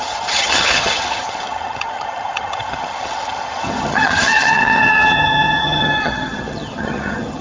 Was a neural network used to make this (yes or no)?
yes